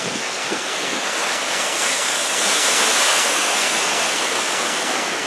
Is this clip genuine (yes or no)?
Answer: no